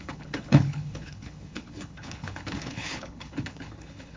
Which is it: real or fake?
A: fake